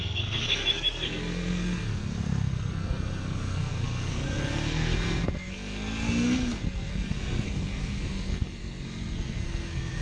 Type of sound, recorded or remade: remade